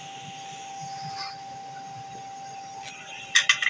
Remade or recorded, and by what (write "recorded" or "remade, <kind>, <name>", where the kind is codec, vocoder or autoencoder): recorded